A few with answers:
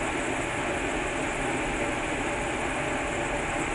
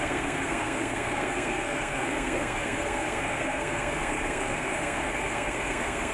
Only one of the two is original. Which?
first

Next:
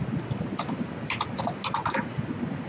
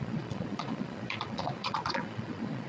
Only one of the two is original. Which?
first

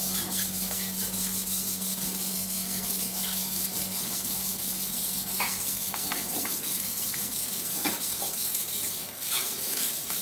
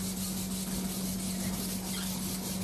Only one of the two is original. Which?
second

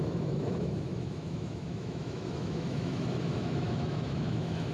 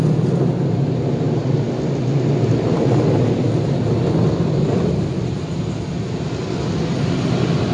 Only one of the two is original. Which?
second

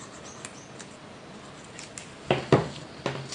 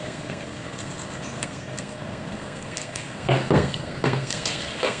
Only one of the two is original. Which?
first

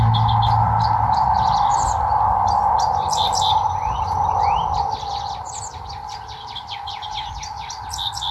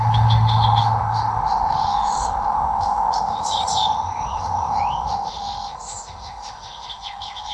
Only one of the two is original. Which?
first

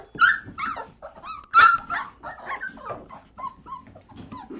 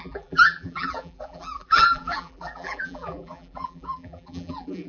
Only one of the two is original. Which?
first